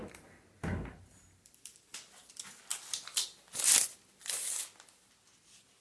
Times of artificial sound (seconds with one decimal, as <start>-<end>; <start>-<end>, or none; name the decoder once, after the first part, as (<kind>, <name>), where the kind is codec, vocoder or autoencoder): 0.0-2.3 (vocoder, BigVGAN v2); 2.7-4.6

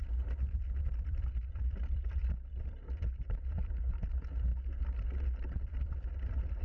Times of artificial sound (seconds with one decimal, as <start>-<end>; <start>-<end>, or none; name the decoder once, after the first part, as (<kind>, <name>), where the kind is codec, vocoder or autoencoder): 0.0-4.5 (vocoder, BigVGAN v2); 5.0-6.6

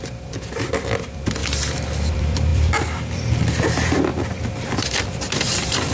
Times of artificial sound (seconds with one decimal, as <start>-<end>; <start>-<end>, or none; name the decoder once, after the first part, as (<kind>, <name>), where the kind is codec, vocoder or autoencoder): 0.0-1.4 (vocoder, BigVGAN v2); 2.1-4.1; 4.7-5.9

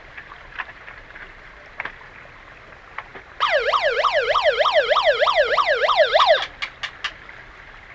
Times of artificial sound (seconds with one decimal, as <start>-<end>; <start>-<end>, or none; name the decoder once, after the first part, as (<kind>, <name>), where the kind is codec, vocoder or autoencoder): 0.0-2.4 (vocoder, BigVGAN v2)